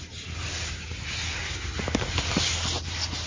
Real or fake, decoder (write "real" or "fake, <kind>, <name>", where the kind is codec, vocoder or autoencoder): real